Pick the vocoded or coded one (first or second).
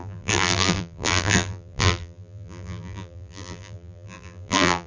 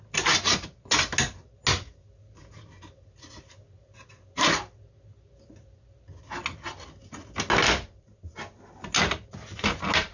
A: first